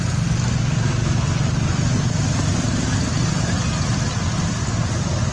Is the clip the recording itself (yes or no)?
yes